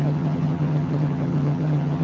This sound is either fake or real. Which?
fake